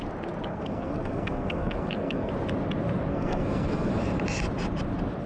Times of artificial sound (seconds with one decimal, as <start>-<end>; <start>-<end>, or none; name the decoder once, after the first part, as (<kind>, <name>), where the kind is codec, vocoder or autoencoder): 0.5-2.3 (codec, SNAC); 3.1-3.9